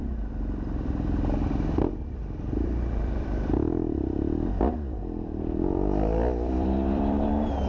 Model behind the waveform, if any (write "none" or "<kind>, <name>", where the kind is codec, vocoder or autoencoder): vocoder, BigVGAN v2